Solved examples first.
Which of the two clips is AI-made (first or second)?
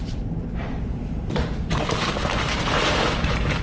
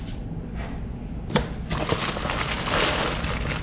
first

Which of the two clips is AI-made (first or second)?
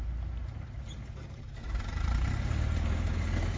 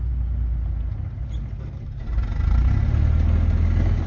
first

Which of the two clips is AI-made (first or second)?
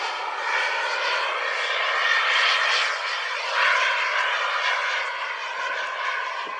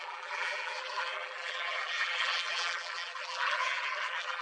second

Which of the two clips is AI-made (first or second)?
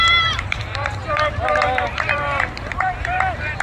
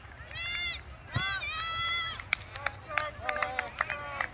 first